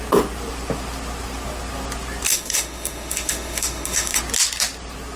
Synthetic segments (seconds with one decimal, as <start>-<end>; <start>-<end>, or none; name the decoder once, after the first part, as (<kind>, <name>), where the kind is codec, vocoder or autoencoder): 2.3-4.2 (autoencoder, DAC-VAE)